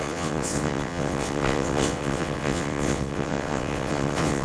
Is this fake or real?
fake